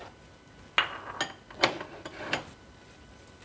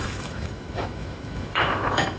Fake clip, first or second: second